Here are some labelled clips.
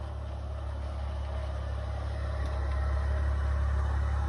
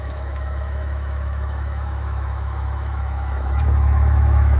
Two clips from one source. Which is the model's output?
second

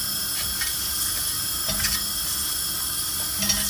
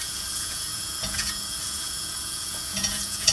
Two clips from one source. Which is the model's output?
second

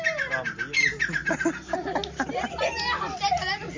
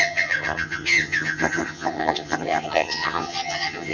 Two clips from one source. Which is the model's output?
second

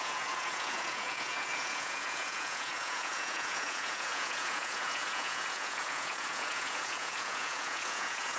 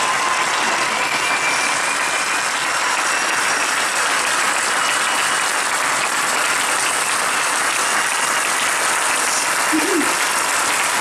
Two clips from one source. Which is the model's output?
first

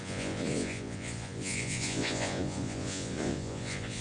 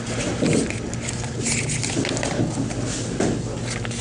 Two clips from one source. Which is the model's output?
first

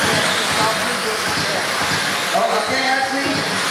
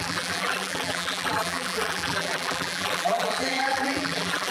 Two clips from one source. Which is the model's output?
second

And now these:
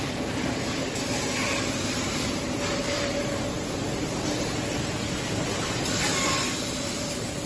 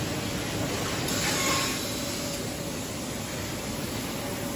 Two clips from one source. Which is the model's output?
first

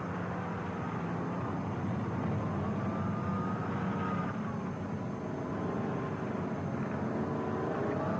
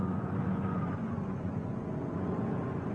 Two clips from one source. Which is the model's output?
second